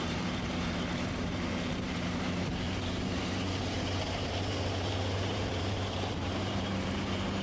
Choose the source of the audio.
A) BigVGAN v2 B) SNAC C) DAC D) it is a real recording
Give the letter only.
A